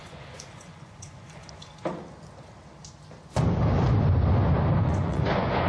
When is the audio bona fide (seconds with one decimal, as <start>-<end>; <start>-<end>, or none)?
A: 1.4-4.8